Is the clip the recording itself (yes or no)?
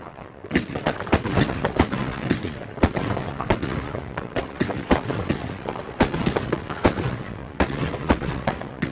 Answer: no